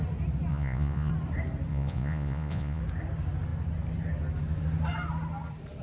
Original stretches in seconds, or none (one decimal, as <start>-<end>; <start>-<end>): 0.0-0.5; 1.1-1.7; 2.8-5.8